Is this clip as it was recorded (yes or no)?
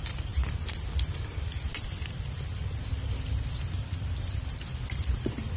no